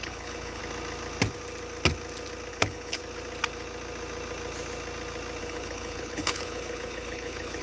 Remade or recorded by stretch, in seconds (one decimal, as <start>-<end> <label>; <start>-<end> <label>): 0.0-0.6 remade; 0.6-2.5 recorded; 2.5-3.0 remade; 3.0-5.4 recorded; 5.4-7.6 remade